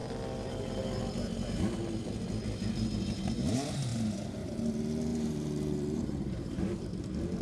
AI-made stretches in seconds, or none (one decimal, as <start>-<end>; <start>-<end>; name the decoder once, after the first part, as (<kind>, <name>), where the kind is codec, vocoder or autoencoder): 5.1-6.9 (vocoder, BigVGAN v2)